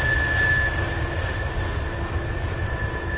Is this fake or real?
real